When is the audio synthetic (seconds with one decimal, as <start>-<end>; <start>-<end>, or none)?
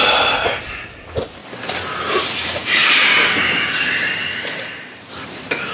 0.0-1.4; 2.2-5.7